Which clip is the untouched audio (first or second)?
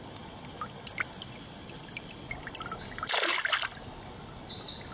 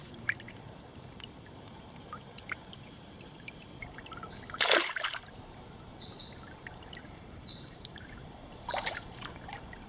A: first